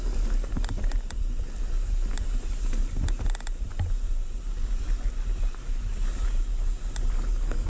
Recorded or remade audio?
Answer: recorded